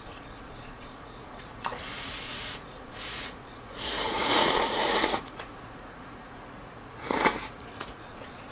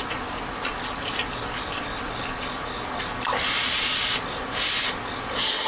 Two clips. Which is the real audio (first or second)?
second